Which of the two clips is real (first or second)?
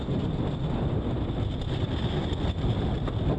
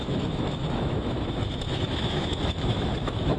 first